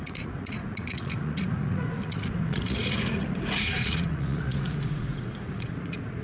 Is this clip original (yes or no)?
no